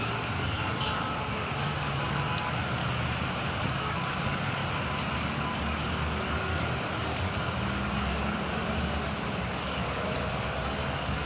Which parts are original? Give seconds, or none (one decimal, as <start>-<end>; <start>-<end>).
2.8-3.5; 4.6-5.2